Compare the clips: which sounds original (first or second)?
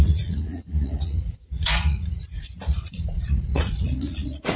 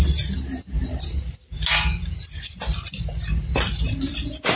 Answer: second